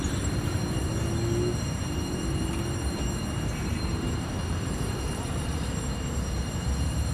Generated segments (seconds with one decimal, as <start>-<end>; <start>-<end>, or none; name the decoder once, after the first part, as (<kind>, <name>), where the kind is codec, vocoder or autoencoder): 0.0-0.8 (vocoder, BigVGAN v2); 1.6-7.1